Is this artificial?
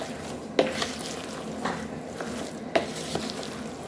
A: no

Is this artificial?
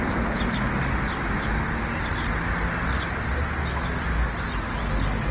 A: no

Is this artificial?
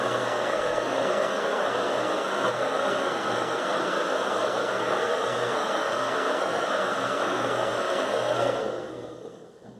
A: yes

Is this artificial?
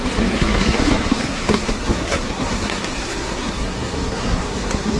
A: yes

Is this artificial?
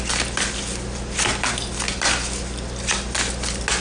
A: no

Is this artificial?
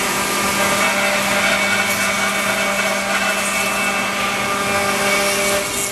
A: no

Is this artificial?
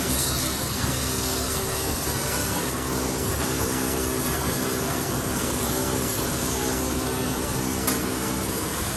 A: yes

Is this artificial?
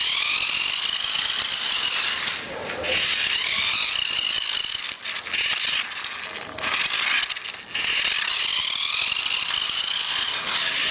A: no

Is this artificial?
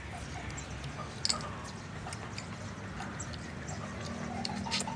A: no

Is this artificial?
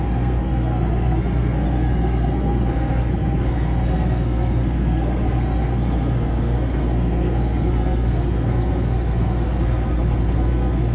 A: yes